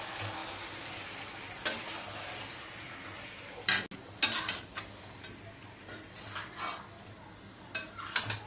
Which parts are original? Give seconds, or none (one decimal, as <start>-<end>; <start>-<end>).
0.0-8.5